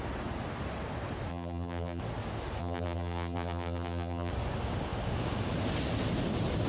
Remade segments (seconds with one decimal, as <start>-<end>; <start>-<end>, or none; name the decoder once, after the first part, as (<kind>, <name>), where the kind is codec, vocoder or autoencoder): 1.3-2.0 (vocoder, BigVGAN v2); 2.6-4.3